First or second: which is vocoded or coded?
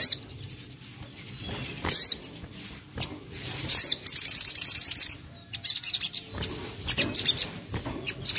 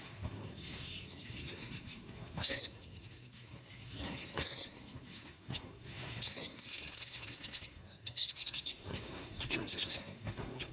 second